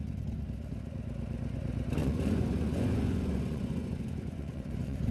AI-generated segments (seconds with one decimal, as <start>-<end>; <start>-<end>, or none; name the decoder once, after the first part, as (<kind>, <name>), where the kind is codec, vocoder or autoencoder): 2.0-5.1 (vocoder, Vocos)